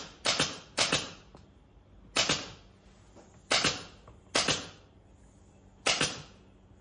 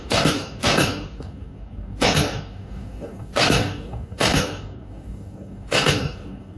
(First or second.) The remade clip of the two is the second